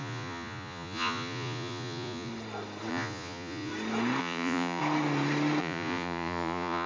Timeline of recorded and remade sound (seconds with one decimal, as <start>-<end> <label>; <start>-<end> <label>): 0.0-2.3 remade; 2.3-2.9 recorded; 2.9-3.7 remade; 3.7-4.2 recorded; 4.2-4.8 remade; 4.8-5.6 recorded; 5.6-6.9 remade

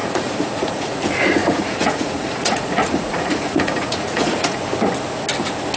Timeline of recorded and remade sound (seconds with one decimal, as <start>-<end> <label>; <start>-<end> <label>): 0.0-1.0 remade; 1.0-1.4 recorded; 1.4-4.6 remade; 4.6-5.8 recorded